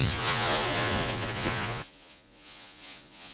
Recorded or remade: remade